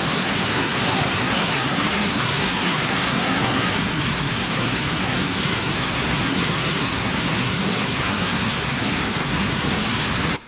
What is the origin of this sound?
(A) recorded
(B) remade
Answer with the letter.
B